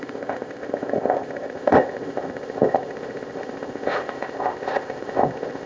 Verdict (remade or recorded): remade